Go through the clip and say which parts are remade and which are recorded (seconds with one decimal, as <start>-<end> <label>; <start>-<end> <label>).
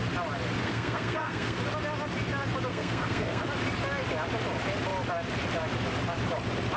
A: 0.0-0.6 recorded; 0.6-1.6 remade; 1.6-2.7 recorded; 2.7-3.4 remade; 3.4-6.8 recorded